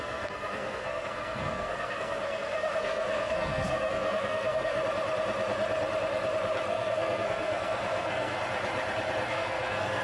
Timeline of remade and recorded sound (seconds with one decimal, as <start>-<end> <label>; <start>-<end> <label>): 0.0-4.8 remade; 4.8-6.7 recorded; 6.7-8.4 remade; 8.4-9.3 recorded; 9.3-10.0 remade